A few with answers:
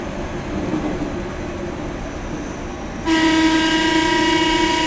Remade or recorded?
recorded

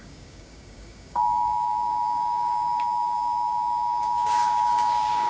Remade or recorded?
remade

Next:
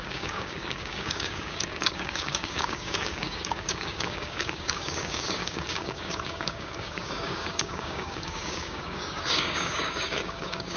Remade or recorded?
remade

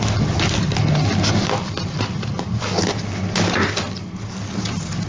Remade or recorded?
recorded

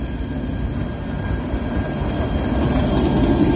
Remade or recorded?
recorded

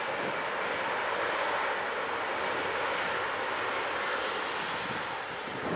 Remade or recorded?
recorded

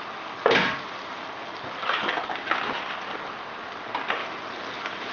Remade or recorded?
recorded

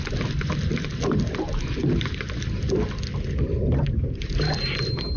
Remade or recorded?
recorded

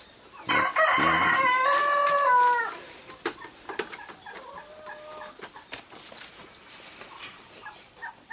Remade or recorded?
recorded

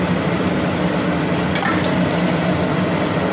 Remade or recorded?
recorded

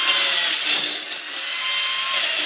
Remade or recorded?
recorded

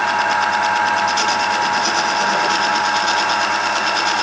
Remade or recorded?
recorded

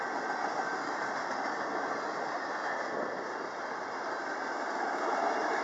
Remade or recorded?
recorded